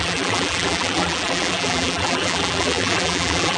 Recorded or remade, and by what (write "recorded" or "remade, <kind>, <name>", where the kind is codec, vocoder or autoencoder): remade, vocoder, BigVGAN v2